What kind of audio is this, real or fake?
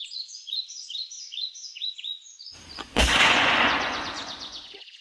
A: fake